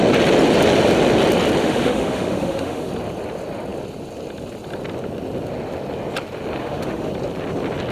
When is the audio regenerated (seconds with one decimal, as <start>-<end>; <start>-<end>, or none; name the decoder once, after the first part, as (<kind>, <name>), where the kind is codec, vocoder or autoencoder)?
1.6-2.9 (autoencoder, DAC-VAE); 6.6-7.1